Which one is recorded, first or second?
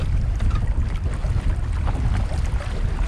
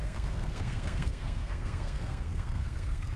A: first